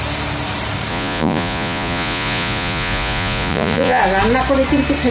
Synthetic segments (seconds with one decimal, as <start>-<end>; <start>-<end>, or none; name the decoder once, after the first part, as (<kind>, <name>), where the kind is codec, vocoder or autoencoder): 0.9-4.0 (vocoder, Vocos)